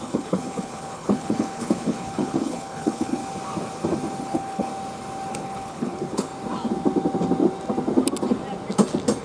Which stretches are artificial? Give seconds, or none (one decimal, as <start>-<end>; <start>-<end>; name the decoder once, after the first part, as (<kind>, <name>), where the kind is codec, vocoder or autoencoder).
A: 0.0-3.2 (codec, HILCodec); 4.2-4.7; 5.3-6.3